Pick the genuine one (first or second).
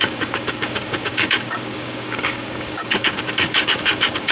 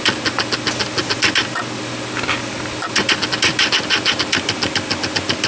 second